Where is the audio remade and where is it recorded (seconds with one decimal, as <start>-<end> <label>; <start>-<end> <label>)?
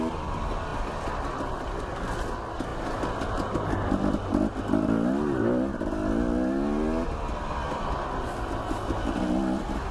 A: 0.0-9.9 recorded